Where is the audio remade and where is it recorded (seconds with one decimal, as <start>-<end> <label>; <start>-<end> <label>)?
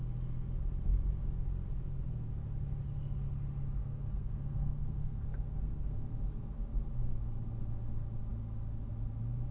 0.0-3.8 recorded; 3.8-6.2 remade; 6.2-9.5 recorded